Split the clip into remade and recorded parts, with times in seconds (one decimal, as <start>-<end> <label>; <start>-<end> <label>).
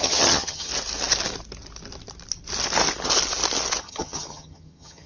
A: 0.0-0.7 remade; 0.7-3.8 recorded; 3.8-5.1 remade